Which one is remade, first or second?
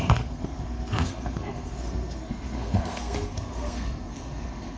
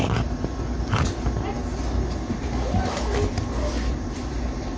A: first